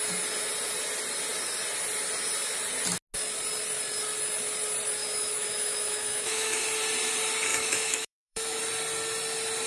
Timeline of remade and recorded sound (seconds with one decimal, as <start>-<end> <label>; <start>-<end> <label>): 0.0-5.0 recorded; 5.0-6.6 remade; 6.6-7.5 recorded; 7.5-8.6 remade; 8.6-9.7 recorded